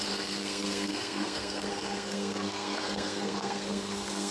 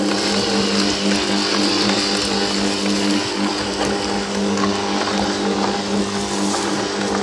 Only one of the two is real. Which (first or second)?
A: second